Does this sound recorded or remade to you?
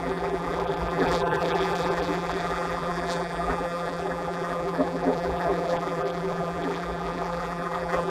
remade